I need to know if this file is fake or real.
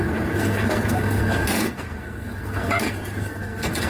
fake